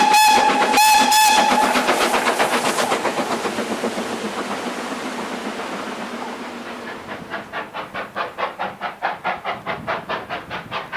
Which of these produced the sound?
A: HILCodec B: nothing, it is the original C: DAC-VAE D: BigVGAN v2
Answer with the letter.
B